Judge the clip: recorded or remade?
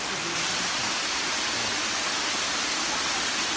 recorded